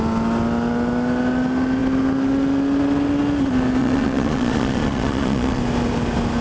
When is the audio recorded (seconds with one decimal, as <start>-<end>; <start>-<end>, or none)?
0.0-3.8; 5.6-6.4